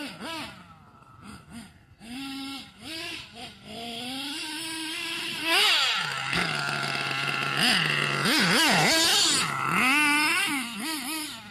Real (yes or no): yes